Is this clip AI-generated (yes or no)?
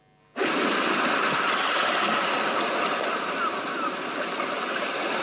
no